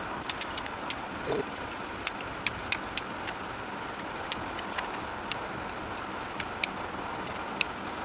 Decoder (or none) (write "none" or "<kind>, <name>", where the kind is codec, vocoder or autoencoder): none